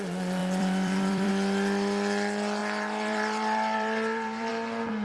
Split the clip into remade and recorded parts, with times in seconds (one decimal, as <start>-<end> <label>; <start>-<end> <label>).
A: 0.0-0.4 recorded; 0.4-1.3 remade; 1.3-2.6 recorded; 2.6-4.5 remade; 4.5-5.0 recorded